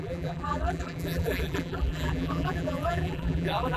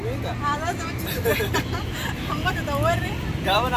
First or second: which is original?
second